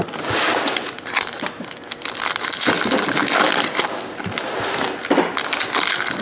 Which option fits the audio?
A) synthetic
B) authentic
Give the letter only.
B